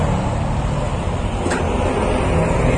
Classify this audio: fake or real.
real